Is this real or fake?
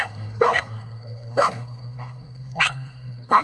fake